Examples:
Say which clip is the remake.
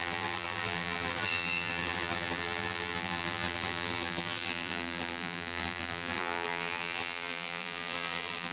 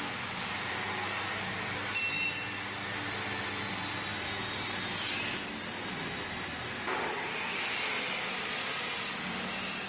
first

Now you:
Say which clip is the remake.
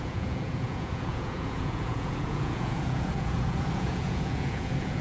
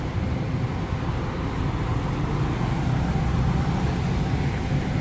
first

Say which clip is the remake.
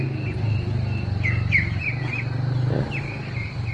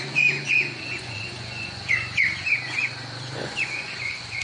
second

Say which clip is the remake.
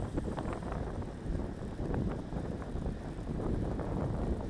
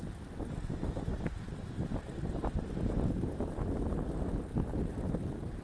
first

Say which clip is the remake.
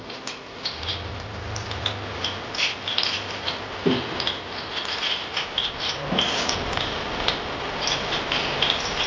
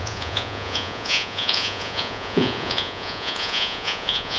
second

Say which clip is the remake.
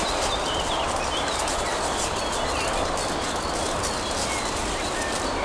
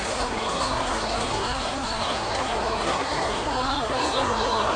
second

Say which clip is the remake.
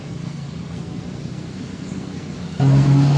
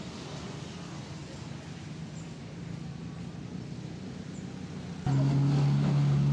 first